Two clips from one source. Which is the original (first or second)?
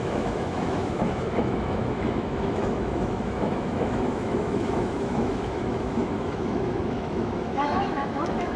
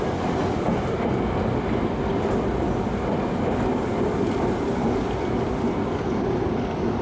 second